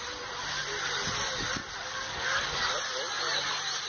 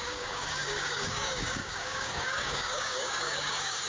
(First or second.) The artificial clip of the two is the second